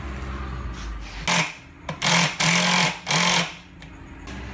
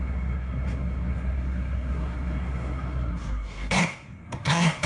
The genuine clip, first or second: first